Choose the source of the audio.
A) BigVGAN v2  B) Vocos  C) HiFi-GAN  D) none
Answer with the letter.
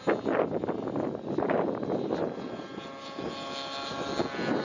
D